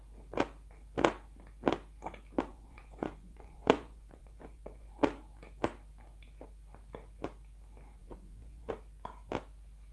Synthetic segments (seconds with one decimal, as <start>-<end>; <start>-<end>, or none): 2.5-4.9; 8.0-8.7